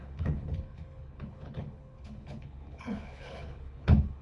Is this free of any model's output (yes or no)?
no